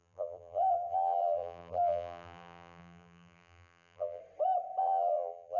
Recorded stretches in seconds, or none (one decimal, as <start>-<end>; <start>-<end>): 4.2-4.8